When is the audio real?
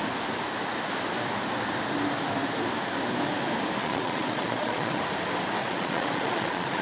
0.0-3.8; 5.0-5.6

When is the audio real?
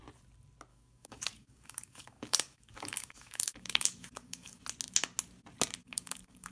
0.0-0.7; 4.6-5.8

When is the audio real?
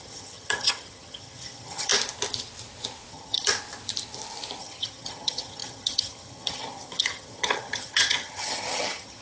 1.9-3.1; 3.5-4.6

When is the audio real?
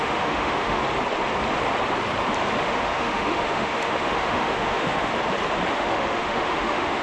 0.8-2.6; 5.1-5.7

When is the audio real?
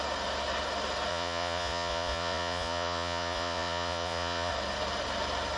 0.0-1.1; 4.5-5.6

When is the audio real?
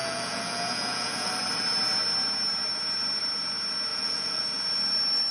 1.3-3.9; 4.4-5.3